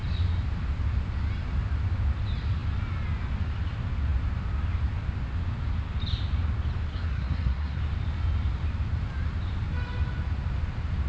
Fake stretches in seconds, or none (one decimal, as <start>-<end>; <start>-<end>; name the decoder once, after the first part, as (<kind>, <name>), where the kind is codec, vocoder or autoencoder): 6.9-7.8 (codec, SNAC)